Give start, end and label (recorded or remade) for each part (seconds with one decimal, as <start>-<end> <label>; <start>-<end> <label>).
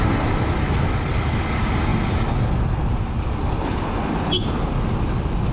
0.0-3.4 recorded; 3.4-4.5 remade; 4.5-5.5 recorded